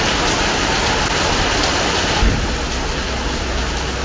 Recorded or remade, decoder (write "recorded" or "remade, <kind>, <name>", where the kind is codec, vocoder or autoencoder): recorded